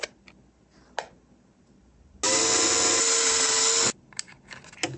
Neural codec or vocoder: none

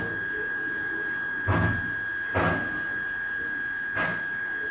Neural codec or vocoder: none